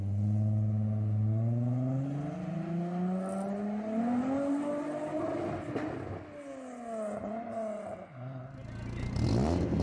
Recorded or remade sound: recorded